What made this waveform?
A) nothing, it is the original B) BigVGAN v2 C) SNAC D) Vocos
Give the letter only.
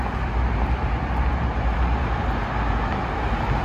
A